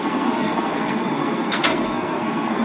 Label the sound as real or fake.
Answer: fake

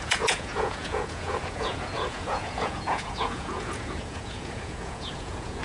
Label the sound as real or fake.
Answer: fake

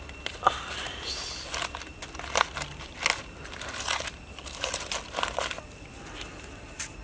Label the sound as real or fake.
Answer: real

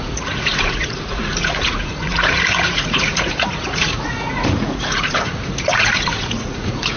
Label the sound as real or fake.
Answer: fake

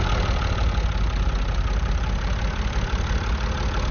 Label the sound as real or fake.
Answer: real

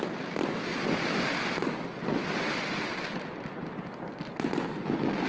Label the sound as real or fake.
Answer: real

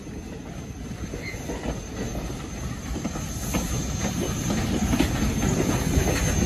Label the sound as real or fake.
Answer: real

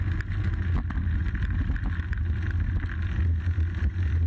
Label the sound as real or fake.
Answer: real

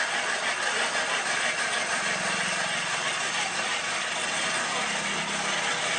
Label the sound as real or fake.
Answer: fake